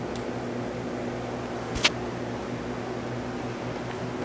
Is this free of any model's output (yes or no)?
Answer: yes